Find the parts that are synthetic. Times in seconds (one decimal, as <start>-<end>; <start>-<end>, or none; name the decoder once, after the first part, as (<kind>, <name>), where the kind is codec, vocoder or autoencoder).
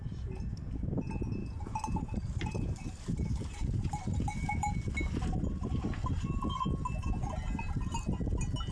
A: 1.4-4.9 (vocoder, BigVGAN v2)